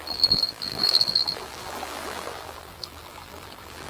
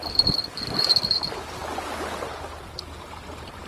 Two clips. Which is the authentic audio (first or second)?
second